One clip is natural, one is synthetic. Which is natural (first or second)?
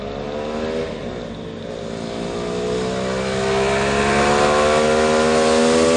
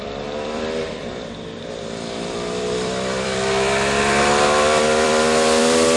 first